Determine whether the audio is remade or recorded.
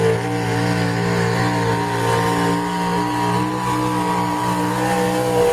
recorded